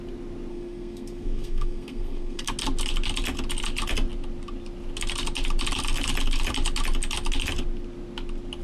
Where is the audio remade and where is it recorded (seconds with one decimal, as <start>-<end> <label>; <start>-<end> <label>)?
0.0-0.5 recorded; 0.5-2.5 remade; 2.5-8.6 recorded